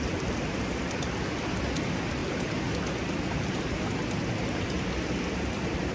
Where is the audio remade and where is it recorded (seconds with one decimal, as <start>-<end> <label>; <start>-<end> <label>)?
0.0-5.9 recorded